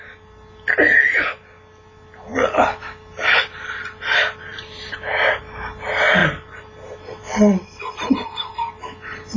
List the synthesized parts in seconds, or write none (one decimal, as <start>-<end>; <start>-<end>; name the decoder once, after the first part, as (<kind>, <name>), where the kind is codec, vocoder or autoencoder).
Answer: 4.5-5.4 (vocoder, BigVGAN v2); 6.2-8.1